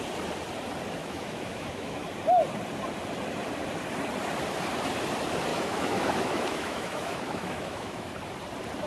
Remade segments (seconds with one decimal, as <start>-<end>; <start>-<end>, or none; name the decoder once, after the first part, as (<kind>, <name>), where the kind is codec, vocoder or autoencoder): 1.0-2.0 (autoencoder, DAC-VAE); 5.5-8.1